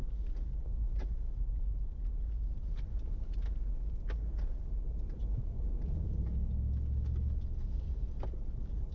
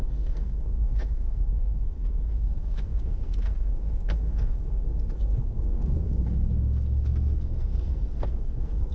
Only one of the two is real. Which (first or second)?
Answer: first